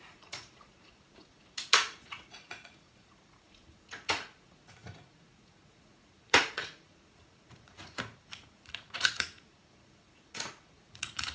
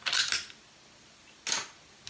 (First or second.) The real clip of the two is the second